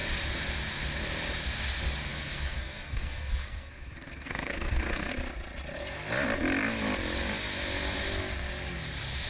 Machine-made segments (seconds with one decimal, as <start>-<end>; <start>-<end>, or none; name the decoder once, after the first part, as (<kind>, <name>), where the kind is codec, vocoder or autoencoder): 2.1-5.1 (codec, SNAC)